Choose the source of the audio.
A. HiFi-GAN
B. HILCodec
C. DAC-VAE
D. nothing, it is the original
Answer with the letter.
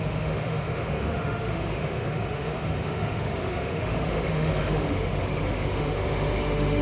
C